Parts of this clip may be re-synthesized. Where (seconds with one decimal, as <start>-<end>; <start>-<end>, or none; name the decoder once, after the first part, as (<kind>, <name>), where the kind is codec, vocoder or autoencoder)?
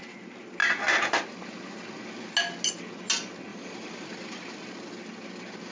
0.6-1.2 (vocoder, BigVGAN v2); 3.5-4.9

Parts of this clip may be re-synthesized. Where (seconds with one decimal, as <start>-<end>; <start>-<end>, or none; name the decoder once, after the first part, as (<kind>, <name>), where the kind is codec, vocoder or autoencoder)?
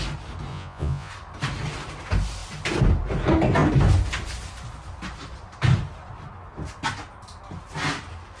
0.5-1.1 (vocoder, Vocos)